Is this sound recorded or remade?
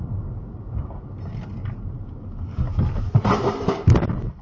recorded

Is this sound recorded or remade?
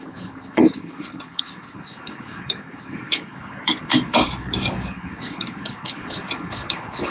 remade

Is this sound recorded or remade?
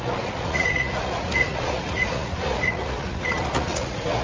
remade